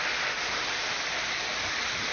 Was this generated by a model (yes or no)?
yes